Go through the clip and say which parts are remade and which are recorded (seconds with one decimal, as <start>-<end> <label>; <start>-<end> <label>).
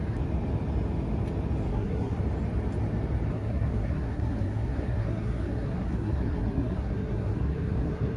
0.0-1.7 recorded; 1.7-2.2 remade; 2.2-3.3 recorded; 3.3-8.2 remade